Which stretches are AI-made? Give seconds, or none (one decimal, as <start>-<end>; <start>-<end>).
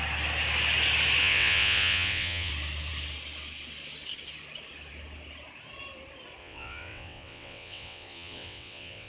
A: 1.2-2.5; 6.4-9.1